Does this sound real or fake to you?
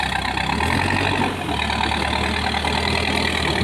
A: real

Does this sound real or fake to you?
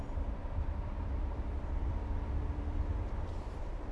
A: real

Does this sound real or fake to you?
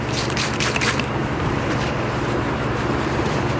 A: fake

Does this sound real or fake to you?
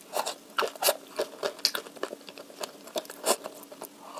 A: real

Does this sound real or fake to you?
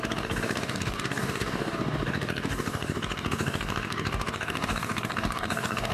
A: fake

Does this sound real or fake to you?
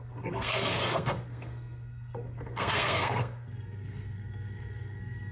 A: fake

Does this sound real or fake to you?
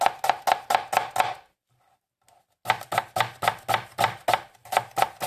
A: real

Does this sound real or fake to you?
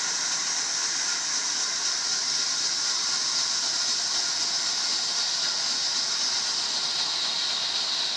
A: real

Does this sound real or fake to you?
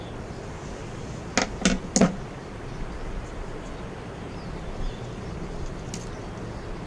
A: real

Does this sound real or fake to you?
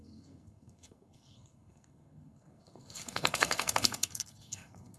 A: fake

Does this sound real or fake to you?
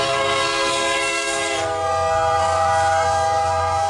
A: fake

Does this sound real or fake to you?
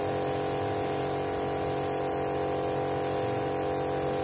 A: real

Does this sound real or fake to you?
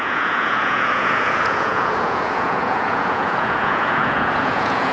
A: fake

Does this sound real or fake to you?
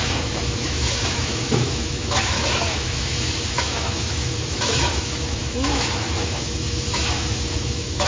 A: fake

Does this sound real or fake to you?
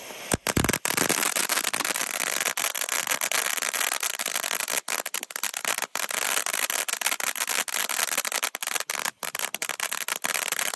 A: real